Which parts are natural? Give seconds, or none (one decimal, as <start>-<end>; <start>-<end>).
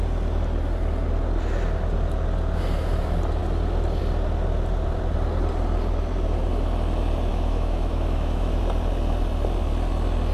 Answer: 0.0-7.3; 8.6-10.3